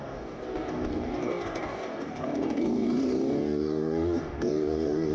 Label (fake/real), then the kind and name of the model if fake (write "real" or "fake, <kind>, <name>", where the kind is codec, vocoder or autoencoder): fake, codec, DAC